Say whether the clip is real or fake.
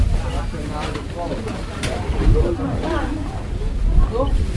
real